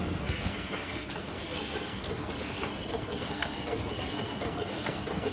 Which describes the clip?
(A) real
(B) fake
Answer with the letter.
B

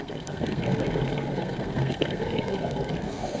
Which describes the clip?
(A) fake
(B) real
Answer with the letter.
A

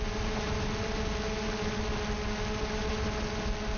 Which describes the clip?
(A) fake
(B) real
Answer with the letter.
B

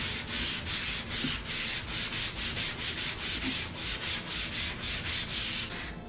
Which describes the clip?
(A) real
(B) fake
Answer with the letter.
A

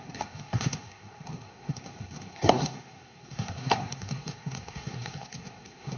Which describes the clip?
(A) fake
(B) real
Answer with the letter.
A